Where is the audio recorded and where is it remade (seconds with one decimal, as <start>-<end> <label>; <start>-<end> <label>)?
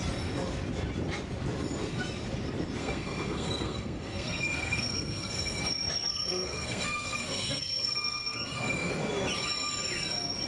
0.0-2.8 recorded; 2.8-5.6 remade; 5.6-6.1 recorded; 6.1-8.9 remade; 8.9-10.5 recorded